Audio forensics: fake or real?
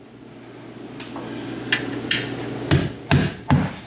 real